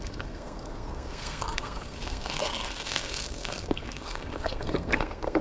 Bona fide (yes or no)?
no